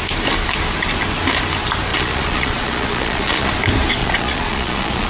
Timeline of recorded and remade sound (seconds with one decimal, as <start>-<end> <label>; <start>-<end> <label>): 0.0-1.9 recorded; 1.9-3.5 remade; 3.5-4.0 recorded; 4.0-5.1 remade